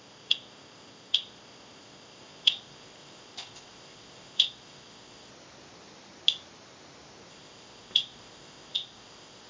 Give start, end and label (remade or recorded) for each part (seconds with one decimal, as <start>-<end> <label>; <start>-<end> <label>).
0.0-5.3 remade; 5.3-7.3 recorded; 7.3-9.5 remade